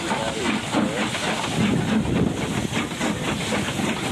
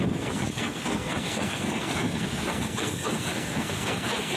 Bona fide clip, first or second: first